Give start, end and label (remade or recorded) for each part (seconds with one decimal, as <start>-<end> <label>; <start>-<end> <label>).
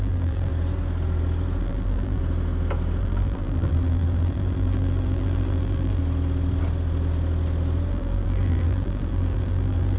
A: 0.0-0.5 remade; 0.5-1.6 recorded; 1.6-2.2 remade; 2.2-3.0 recorded; 3.0-6.0 remade; 6.0-7.9 recorded; 7.9-10.0 remade